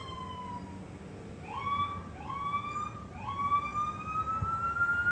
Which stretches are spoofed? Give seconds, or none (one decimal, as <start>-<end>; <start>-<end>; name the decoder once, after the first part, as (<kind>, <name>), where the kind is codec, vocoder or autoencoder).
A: none